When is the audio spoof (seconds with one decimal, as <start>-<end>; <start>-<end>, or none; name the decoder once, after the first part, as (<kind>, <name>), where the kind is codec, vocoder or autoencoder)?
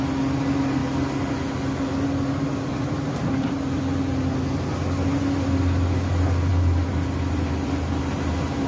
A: none